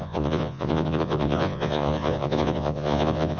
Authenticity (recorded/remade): remade